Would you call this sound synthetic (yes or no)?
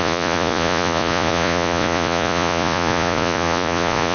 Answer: yes